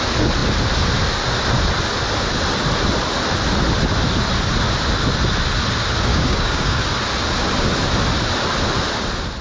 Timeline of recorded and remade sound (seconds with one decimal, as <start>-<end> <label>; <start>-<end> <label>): 0.0-6.1 recorded; 6.1-6.8 remade; 6.8-9.4 recorded